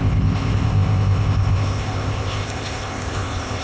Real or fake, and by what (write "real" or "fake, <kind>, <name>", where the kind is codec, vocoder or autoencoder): fake, codec, ZipCodec